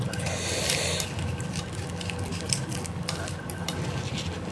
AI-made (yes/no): no